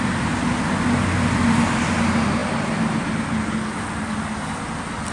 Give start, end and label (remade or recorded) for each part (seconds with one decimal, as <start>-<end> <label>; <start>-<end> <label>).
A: 0.0-5.1 recorded